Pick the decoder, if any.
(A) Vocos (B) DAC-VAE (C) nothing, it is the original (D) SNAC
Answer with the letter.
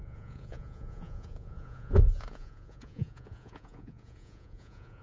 A